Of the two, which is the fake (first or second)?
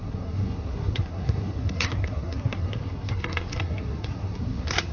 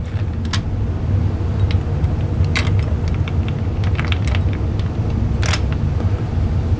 first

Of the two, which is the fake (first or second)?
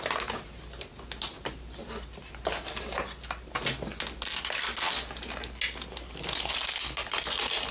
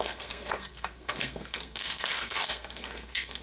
second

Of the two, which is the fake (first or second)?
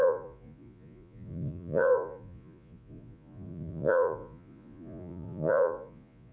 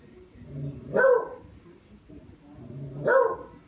first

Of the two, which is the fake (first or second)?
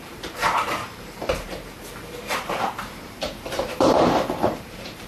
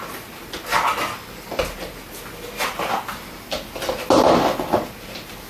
first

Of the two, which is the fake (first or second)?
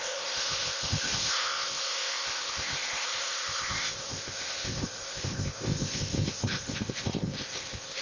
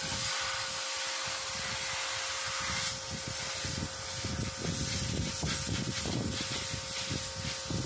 first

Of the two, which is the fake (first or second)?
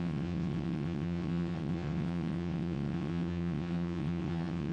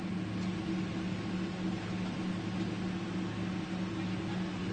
first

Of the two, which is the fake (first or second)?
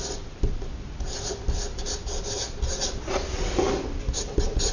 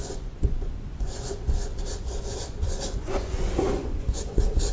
second